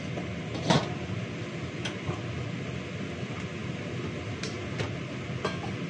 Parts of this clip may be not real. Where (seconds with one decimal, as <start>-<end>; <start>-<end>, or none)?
none